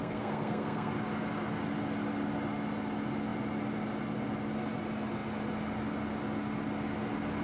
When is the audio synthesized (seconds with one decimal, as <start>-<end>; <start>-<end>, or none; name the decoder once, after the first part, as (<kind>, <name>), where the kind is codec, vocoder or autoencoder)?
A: 0.0-0.9 (codec, SNAC)